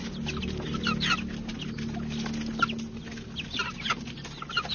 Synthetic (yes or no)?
no